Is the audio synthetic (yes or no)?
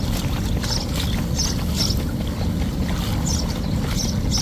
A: no